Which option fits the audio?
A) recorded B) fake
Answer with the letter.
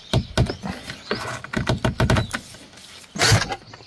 A